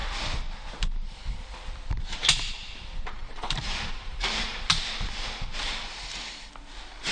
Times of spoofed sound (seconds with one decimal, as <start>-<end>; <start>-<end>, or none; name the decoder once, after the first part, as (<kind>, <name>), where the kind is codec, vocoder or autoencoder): 3.2-4.7 (vocoder, BigVGAN v2)